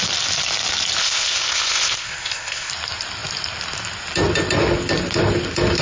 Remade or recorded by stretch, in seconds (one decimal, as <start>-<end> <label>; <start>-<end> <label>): 0.0-1.0 recorded; 1.0-2.7 remade; 2.7-5.8 recorded

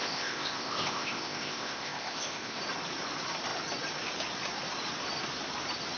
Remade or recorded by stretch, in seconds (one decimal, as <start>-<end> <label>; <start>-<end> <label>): 0.0-2.6 remade; 2.6-6.0 recorded

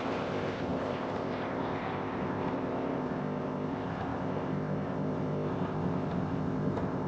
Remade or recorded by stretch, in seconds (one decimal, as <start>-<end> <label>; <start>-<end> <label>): 0.0-7.1 remade